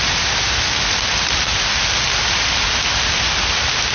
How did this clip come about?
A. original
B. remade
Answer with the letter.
A